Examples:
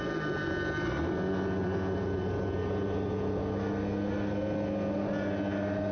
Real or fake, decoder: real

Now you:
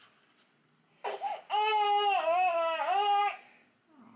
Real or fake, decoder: real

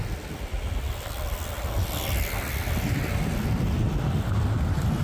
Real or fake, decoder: real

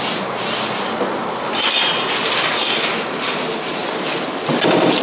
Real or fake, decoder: real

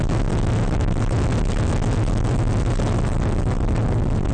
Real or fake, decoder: real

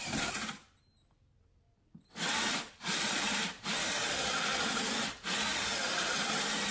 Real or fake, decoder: fake, vocoder, BigVGAN v2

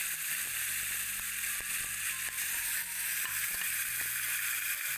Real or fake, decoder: real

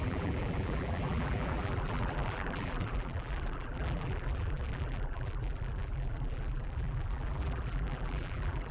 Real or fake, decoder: fake, vocoder, BigVGAN v2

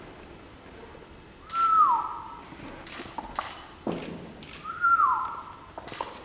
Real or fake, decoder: real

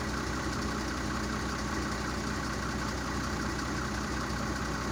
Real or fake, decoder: real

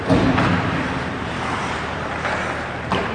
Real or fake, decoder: fake, vocoder, BigVGAN v2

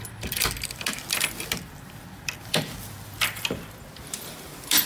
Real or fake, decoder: fake, vocoder, BigVGAN v2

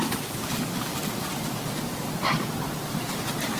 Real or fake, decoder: real